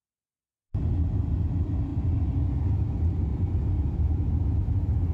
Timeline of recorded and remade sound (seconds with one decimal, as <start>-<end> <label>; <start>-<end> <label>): 0.0-3.3 recorded; 3.3-4.1 remade; 4.1-5.1 recorded